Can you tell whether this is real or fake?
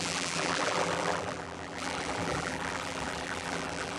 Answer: fake